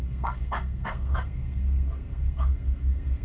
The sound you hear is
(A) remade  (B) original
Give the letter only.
A